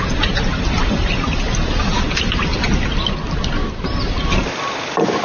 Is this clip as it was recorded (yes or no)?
yes